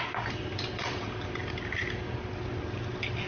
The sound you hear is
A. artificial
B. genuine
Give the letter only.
B